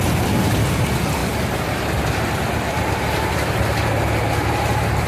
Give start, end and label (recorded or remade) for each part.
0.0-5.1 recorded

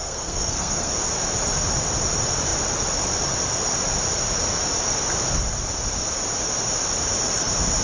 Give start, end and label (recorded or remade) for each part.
0.0-0.9 remade; 0.9-7.8 recorded

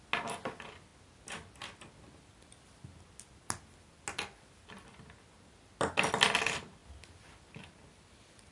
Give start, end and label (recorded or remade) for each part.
0.0-8.5 recorded

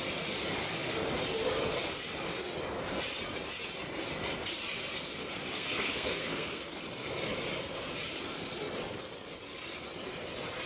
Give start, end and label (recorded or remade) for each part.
0.0-5.5 recorded; 5.5-6.8 remade; 6.8-10.7 recorded

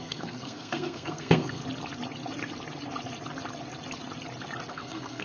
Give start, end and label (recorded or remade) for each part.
0.0-1.6 remade; 1.6-4.7 recorded; 4.7-5.2 remade

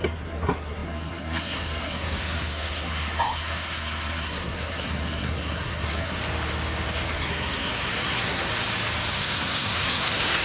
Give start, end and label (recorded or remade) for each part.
0.0-6.2 remade; 6.2-7.1 recorded; 7.1-8.5 remade; 8.5-9.1 recorded; 9.1-10.4 remade